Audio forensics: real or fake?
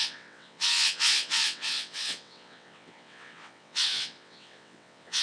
fake